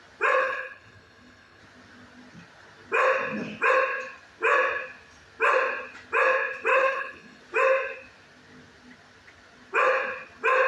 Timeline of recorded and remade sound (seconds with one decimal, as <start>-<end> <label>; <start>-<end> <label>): 0.0-0.4 recorded; 0.4-1.6 remade; 1.6-6.7 recorded; 6.7-7.4 remade; 7.4-10.7 recorded